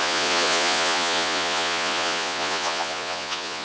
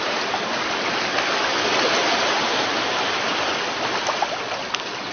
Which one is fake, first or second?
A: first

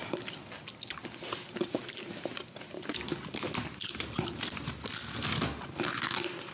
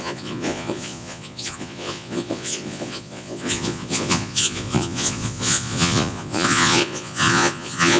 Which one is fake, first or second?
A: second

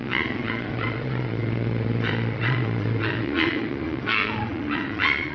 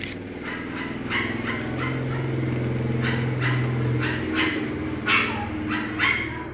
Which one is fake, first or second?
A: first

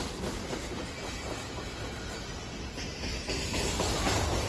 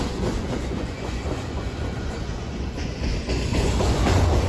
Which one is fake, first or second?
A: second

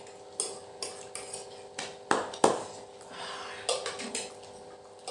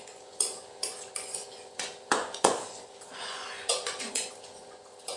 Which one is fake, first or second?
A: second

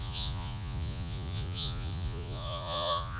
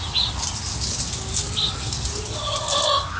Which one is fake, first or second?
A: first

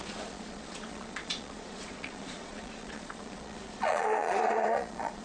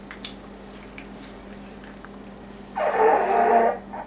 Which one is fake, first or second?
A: first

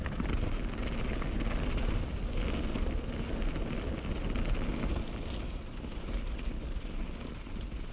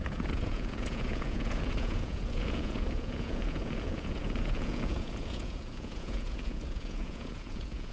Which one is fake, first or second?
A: second